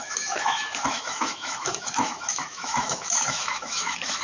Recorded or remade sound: remade